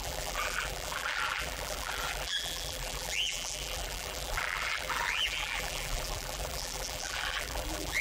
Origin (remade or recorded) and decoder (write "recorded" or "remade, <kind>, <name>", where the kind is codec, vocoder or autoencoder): remade, vocoder, BigVGAN v2